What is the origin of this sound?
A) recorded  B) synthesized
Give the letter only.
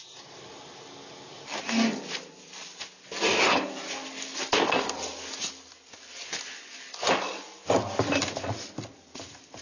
A